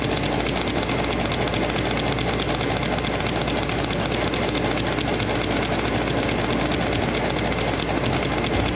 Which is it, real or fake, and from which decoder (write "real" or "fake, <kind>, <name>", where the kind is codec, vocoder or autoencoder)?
real